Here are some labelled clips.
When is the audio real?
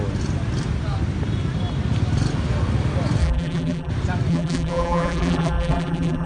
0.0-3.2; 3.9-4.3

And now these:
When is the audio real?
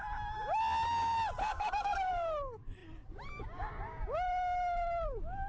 0.0-1.4; 2.1-5.5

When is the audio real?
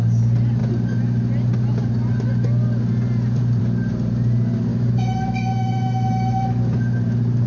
0.0-4.7; 6.6-7.5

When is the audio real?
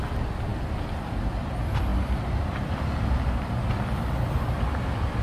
0.0-5.2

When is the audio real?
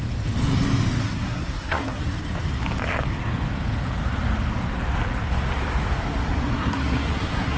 0.0-1.0; 2.0-6.5